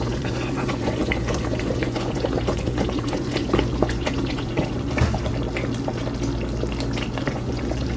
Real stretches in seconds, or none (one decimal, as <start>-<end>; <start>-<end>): 5.3-7.2